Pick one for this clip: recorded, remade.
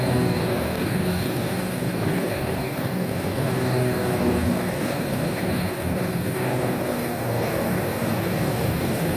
remade